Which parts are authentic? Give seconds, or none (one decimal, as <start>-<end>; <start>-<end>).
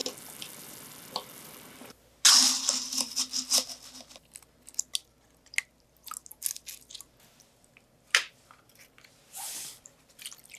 0.0-10.6